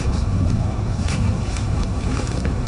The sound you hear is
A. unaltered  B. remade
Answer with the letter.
B